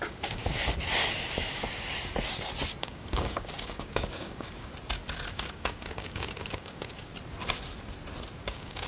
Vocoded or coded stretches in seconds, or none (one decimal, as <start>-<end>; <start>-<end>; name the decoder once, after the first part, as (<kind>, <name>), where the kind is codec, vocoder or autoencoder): 0.0-0.4 (codec, DAC); 2.8-4.7; 5.3-7.1; 8.4-8.9